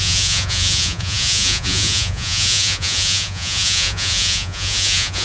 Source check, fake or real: fake